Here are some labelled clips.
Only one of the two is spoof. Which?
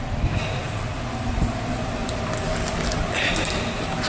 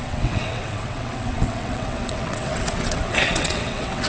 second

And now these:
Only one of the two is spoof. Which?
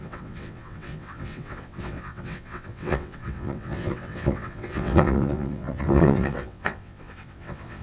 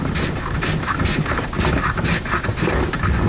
first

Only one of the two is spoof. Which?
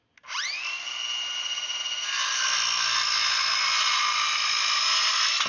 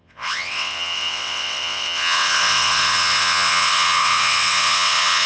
second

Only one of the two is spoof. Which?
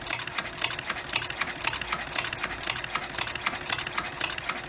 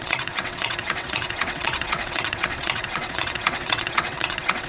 second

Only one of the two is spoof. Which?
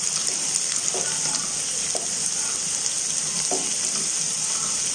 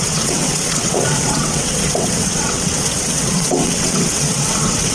second